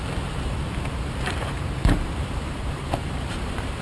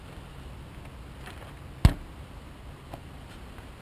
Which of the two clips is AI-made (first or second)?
first